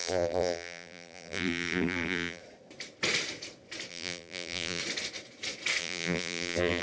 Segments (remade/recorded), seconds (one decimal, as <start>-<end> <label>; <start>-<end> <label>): 0.0-2.4 remade; 2.4-3.9 recorded; 3.9-4.8 remade; 4.8-5.8 recorded; 5.8-6.8 remade